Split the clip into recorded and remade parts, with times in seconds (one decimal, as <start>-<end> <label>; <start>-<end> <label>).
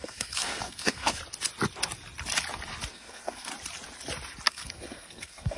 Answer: 0.0-1.2 remade; 1.2-2.9 recorded; 2.9-3.5 remade; 3.5-4.5 recorded; 4.5-5.6 remade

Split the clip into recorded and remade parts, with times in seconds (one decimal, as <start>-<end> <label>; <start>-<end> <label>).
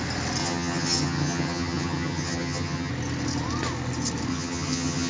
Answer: 0.0-0.4 recorded; 0.4-2.9 remade; 2.9-4.3 recorded; 4.3-5.1 remade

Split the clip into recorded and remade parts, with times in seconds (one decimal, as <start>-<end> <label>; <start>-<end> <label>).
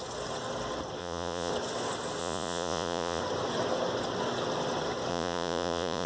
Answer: 0.0-1.0 recorded; 1.0-1.5 remade; 1.5-2.2 recorded; 2.2-3.2 remade; 3.2-5.1 recorded; 5.1-6.1 remade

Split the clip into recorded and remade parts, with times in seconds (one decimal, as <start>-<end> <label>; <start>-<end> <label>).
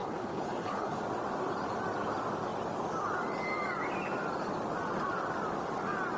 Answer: 0.0-1.0 remade; 1.0-6.2 recorded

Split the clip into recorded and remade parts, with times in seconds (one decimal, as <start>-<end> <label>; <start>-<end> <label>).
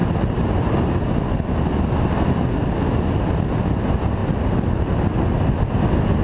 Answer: 0.0-6.2 recorded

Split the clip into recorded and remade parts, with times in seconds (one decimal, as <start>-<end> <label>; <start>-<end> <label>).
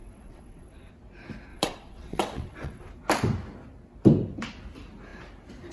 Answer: 0.0-0.9 remade; 0.9-1.5 recorded; 1.5-2.9 remade; 2.9-5.7 recorded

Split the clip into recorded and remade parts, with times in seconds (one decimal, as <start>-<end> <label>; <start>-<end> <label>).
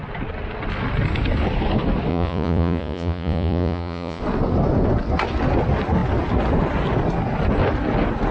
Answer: 0.0-2.1 recorded; 2.1-4.2 remade; 4.2-8.3 recorded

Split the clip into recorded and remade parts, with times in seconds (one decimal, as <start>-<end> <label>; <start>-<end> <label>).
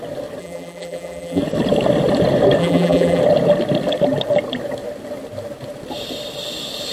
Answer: 0.0-0.4 recorded; 0.4-1.4 remade; 1.4-2.6 recorded; 2.6-3.2 remade; 3.2-6.9 recorded